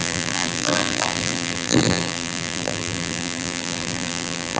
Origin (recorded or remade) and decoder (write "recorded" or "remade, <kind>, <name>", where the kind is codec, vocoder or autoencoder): remade, vocoder, BigVGAN v2